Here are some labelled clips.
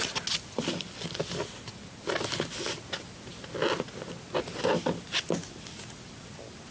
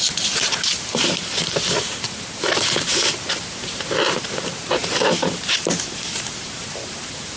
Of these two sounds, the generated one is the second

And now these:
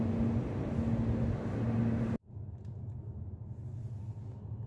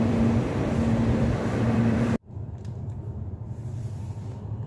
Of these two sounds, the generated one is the second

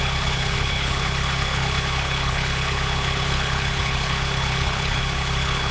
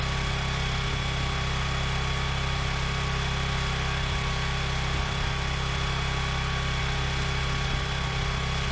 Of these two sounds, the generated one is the first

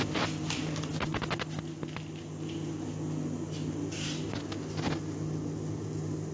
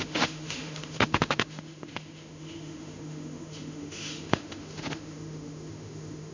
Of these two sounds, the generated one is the second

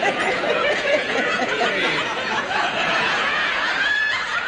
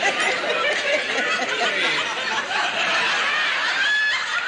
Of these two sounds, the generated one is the first